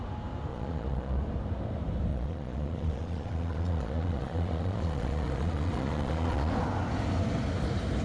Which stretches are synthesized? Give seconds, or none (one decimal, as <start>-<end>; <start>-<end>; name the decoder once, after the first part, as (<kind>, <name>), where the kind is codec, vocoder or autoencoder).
0.5-1.2 (vocoder, Vocos); 2.1-6.5